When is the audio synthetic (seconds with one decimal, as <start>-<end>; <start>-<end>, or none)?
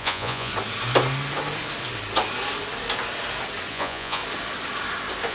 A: 0.0-0.5; 3.7-4.2